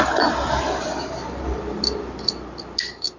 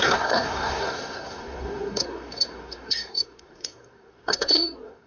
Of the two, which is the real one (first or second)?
first